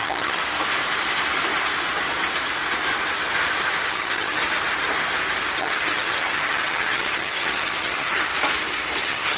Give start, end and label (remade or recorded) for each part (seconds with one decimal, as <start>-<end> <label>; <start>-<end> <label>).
0.0-0.4 remade; 0.4-3.9 recorded; 3.9-4.4 remade; 4.4-5.6 recorded; 5.6-8.3 remade; 8.3-9.0 recorded; 9.0-9.4 remade